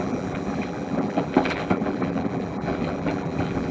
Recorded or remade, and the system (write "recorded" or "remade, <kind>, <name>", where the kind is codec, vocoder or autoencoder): remade, vocoder, BigVGAN v2